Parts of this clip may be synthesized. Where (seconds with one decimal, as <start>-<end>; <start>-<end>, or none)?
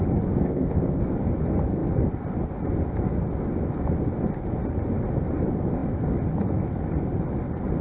0.4-1.0